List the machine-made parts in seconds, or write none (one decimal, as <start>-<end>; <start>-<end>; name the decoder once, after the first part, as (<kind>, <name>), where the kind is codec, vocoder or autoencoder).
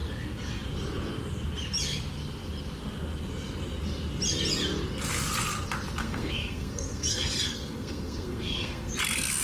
6.0-8.9 (codec, SNAC)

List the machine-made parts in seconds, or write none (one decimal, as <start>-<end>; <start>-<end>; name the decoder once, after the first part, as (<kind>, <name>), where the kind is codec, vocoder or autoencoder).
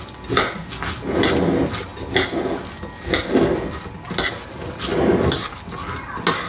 none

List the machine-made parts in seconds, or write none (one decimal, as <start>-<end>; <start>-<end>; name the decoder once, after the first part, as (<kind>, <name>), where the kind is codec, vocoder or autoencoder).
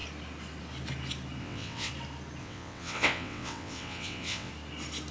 1.4-1.9 (vocoder, WaveNeXt); 2.4-4.5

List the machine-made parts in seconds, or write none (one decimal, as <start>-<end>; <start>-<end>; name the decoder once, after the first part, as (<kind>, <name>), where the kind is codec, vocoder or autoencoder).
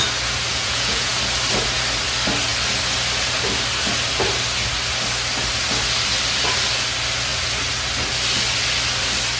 0.5-1.1 (vocoder, Vocos)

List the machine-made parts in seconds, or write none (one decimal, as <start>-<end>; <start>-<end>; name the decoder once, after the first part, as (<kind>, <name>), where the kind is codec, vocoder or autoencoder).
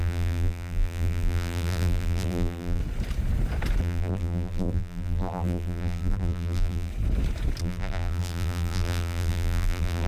0.0-2.8 (vocoder, BigVGAN v2); 3.8-6.9; 7.6-10.1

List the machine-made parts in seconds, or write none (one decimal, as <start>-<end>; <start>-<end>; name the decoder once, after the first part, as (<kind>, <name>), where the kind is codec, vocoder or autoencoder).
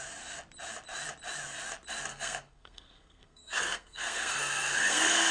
2.1-5.3 (codec, SNAC)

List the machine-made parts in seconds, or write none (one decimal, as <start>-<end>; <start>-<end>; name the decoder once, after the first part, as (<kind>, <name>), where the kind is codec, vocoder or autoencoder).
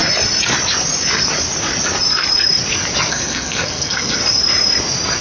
3.1-4.2 (codec, SNAC)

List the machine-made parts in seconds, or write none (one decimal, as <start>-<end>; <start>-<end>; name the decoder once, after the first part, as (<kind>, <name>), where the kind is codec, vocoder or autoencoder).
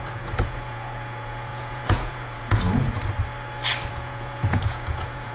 0.0-3.0 (vocoder, Vocos); 3.9-5.3